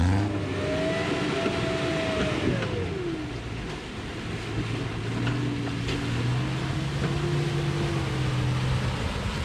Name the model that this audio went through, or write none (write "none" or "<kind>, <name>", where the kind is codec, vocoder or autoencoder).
none